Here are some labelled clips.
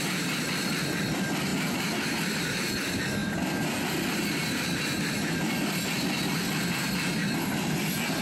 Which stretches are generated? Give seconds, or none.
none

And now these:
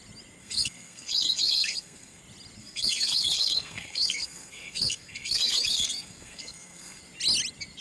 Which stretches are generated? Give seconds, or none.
0.4-2.2 (codec, SNAC); 2.6-7.0

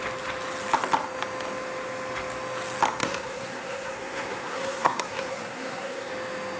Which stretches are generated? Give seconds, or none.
3.0-6.1 (codec, SNAC)

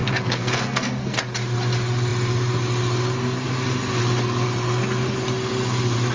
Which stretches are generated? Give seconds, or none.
0.0-1.2 (codec, SNAC)

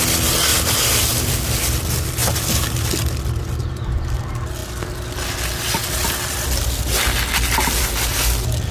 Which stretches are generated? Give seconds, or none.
none